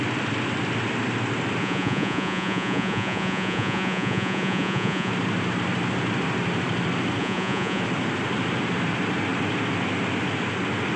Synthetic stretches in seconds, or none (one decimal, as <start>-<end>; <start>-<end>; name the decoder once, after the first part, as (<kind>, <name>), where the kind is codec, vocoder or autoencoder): 1.6-5.1 (vocoder, Vocos); 7.2-7.8